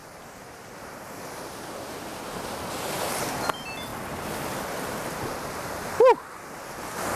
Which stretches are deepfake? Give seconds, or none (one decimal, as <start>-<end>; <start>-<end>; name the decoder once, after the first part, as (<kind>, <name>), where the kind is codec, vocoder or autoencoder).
0.0-1.4 (vocoder, BigVGAN v2); 2.1-3.1